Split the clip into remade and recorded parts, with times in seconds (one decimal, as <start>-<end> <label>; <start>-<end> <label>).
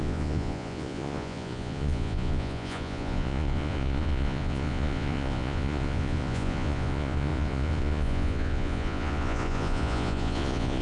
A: 0.0-10.8 remade